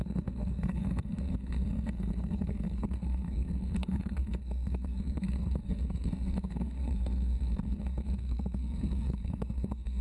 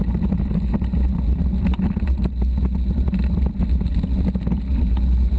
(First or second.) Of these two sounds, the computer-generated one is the first